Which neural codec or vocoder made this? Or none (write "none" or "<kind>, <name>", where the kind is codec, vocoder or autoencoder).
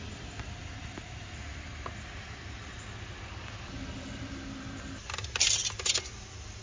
none